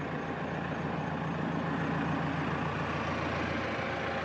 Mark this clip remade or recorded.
recorded